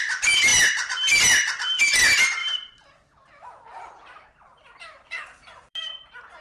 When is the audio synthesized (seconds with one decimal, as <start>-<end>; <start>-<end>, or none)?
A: 2.4-6.4